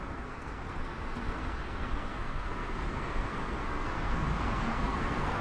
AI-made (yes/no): yes